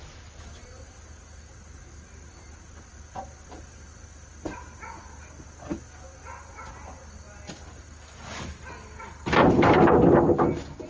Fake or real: real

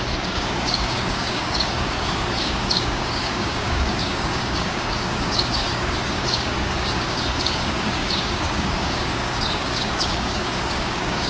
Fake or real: fake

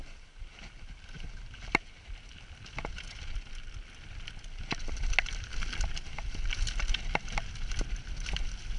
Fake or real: real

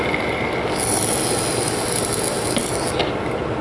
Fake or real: real